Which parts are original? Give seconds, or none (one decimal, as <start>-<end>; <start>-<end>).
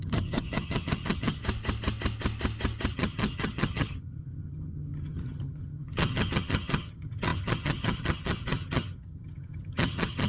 1.4-2.9